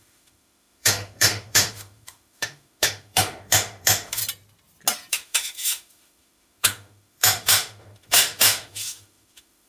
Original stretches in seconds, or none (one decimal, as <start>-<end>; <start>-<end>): 4.2-5.1